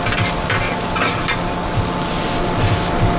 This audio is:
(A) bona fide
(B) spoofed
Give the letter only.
A